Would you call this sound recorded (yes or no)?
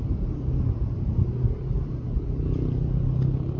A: yes